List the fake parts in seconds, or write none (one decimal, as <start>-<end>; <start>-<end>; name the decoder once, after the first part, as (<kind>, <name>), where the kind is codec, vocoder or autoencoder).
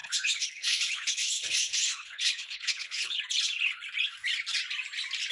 0.0-3.2 (codec, HILCodec)